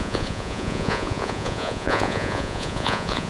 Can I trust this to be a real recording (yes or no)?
no